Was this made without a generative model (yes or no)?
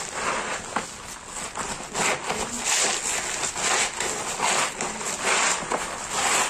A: yes